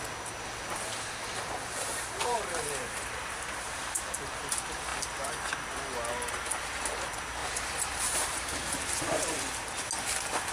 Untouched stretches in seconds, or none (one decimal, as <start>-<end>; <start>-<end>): 0.0-1.3; 4.5-7.4; 9.7-10.5